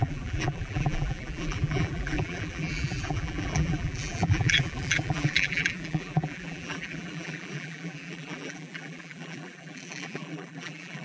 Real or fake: fake